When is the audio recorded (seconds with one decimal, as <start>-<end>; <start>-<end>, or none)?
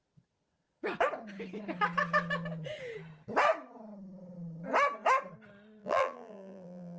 0.0-5.8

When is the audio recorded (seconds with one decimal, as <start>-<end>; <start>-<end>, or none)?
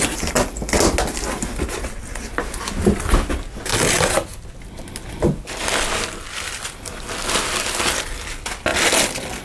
0.0-8.7